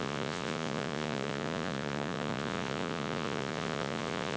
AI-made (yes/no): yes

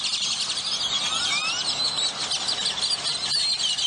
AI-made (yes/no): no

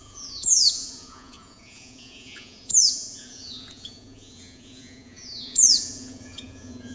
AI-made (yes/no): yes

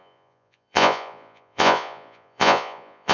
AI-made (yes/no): yes